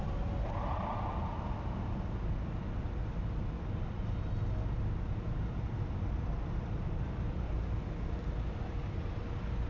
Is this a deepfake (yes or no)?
no